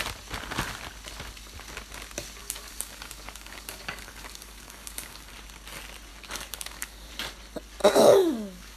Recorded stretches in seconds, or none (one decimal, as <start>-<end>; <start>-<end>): 0.0-2.4; 5.3-6.1; 7.1-7.8